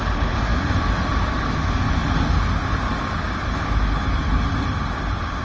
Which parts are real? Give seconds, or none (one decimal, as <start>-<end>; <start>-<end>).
0.0-5.4